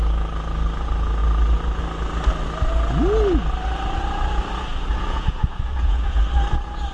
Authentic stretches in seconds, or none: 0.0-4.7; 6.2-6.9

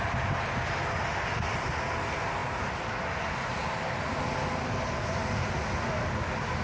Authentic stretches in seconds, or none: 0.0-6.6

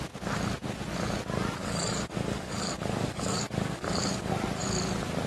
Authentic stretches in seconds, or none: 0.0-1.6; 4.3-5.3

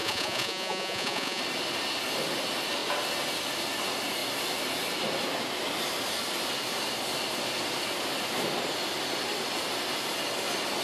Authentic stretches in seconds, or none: 1.4-10.8

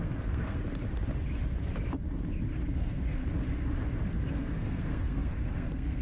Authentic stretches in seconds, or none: 0.6-2.7; 3.2-4.3

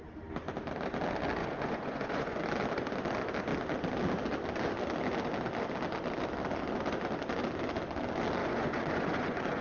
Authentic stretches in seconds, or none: 0.0-1.4; 2.4-8.4

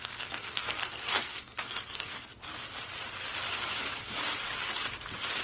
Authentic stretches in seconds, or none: 2.3-5.4